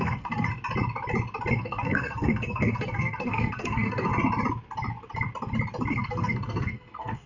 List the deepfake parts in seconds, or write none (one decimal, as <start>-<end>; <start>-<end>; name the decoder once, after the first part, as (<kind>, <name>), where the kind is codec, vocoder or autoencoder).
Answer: 0.0-0.5 (codec, SNAC); 1.5-4.1; 5.9-7.3